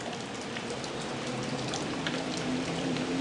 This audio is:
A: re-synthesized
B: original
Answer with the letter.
A